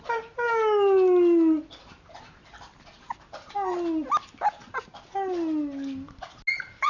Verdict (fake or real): real